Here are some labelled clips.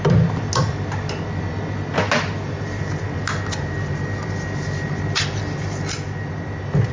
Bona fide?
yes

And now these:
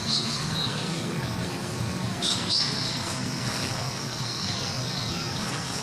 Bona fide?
no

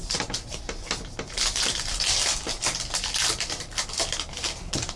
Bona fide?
yes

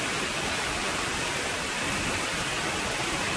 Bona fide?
yes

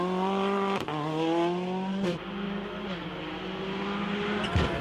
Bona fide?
yes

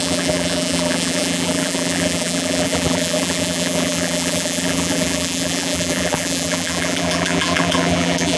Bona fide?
no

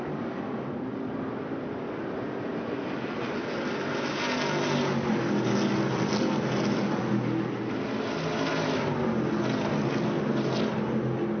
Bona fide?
yes